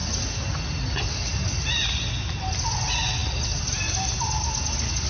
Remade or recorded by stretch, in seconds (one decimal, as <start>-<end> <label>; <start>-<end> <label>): 0.0-5.1 recorded